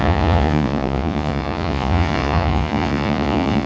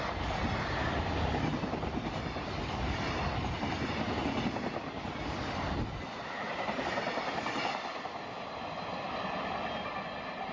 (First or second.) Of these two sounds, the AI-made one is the first